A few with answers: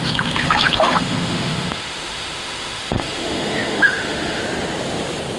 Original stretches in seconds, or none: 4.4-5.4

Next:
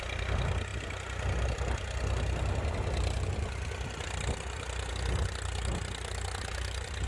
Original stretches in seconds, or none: 0.0-7.1

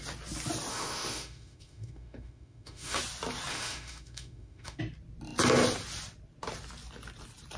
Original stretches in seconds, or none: 0.0-0.7; 3.0-3.5; 4.8-7.6

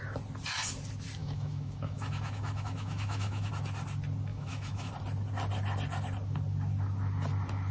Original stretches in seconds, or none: 0.0-1.2; 3.5-4.3; 4.9-7.7

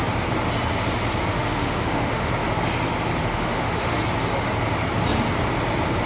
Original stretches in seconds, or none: 0.0-1.3; 2.3-3.2; 4.0-6.1

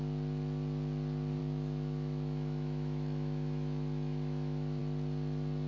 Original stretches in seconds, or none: 0.0-1.4; 4.8-5.7

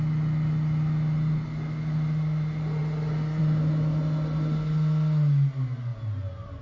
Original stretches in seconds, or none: 0.0-6.6

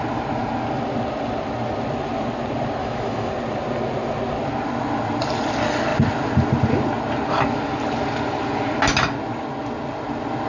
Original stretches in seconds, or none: 0.0-2.8; 3.3-10.5